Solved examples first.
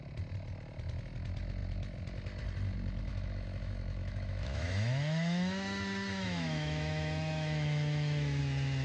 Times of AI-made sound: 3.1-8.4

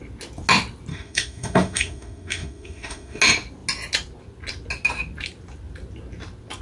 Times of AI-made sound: 0.9-3.2

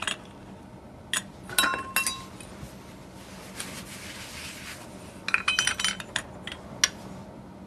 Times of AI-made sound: none

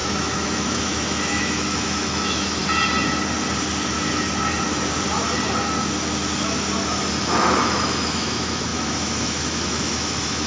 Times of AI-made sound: 0.0-2.6; 7.2-10.5

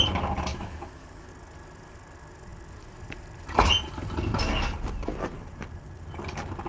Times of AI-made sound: 0.5-1.3

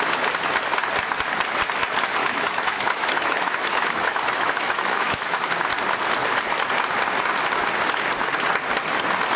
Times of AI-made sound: 2.2-5.5

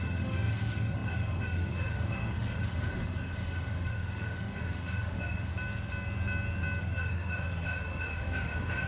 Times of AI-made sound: 0.0-5.5; 6.8-8.9

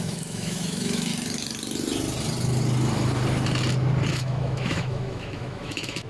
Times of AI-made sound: 0.0-1.1; 4.1-6.1